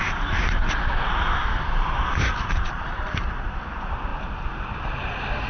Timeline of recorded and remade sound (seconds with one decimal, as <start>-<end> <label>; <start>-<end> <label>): 0.0-1.4 recorded; 1.4-3.6 remade; 3.6-5.5 recorded